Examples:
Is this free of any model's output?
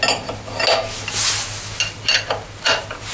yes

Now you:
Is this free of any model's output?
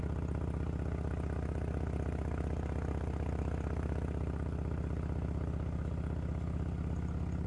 yes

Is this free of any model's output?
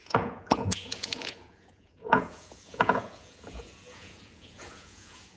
no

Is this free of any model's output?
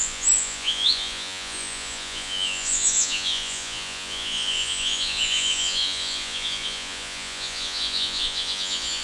no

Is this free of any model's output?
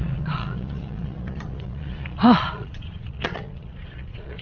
no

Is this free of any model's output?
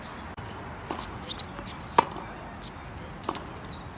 yes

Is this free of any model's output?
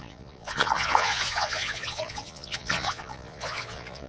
no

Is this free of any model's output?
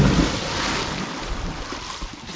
yes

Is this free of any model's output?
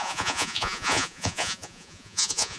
no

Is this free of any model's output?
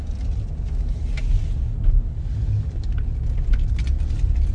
yes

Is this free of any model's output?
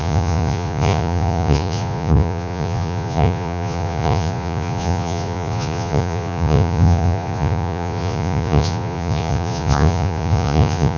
no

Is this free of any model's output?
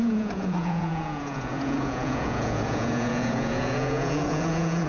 no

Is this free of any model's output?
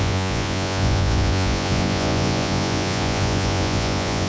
no